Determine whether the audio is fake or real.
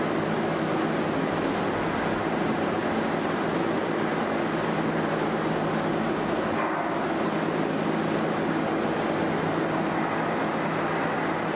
real